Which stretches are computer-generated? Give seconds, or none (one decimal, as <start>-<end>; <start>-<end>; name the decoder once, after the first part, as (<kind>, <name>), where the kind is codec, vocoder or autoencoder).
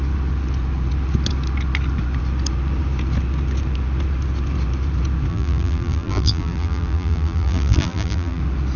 5.3-8.4 (vocoder, BigVGAN v2)